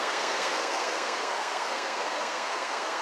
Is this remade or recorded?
remade